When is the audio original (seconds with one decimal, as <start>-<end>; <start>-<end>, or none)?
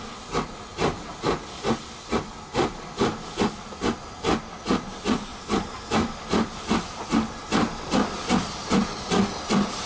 0.0-5.3; 6.1-9.9